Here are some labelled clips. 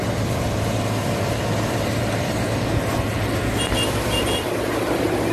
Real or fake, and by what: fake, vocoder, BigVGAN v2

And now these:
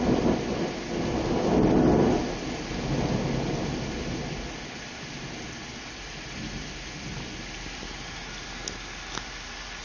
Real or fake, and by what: real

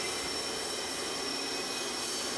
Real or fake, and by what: real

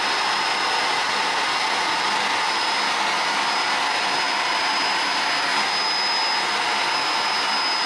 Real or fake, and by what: real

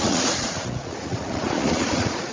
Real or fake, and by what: fake, vocoder, Vocos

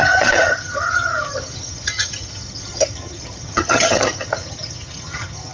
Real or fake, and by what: fake, vocoder, HiFi-GAN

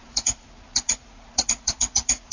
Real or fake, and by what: fake, vocoder, Vocos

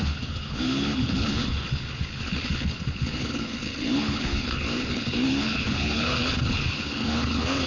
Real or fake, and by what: fake, codec, HILCodec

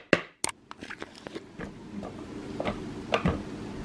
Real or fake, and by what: real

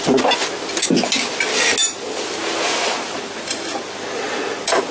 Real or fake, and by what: real